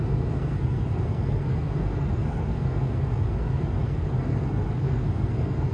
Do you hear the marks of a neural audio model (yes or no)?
yes